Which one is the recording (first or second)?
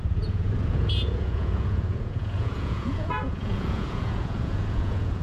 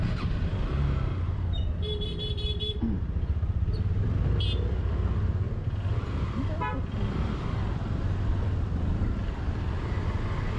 second